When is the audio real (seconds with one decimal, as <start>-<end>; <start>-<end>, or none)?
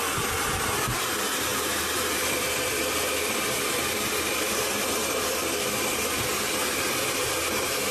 0.0-7.9